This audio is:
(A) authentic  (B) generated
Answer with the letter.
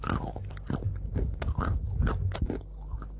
A